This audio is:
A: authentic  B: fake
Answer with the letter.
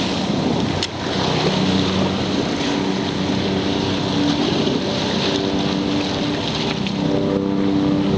A